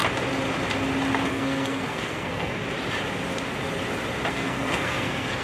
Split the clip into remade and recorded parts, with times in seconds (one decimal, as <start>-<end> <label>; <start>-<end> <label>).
0.0-1.3 recorded; 1.3-2.6 remade; 2.6-4.3 recorded; 4.3-5.4 remade